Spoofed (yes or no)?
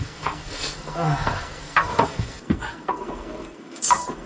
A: yes